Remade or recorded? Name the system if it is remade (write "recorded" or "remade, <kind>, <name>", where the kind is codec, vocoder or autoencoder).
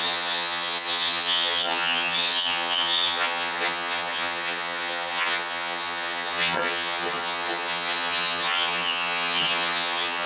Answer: remade, vocoder, HiFi-GAN